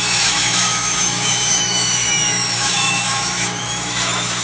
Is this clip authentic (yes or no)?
no